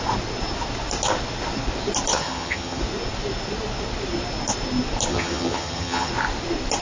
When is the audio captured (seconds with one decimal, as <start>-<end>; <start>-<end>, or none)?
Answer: 0.0-2.1; 2.8-5.1; 6.1-6.8